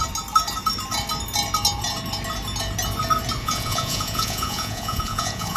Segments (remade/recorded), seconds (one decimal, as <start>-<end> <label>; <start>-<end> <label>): 0.0-3.4 recorded; 3.4-5.6 remade